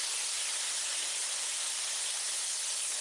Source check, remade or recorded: recorded